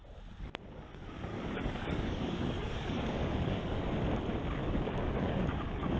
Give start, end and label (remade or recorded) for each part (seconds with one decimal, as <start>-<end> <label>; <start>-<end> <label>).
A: 0.0-1.3 recorded; 1.3-3.9 remade; 3.9-4.6 recorded; 4.6-6.0 remade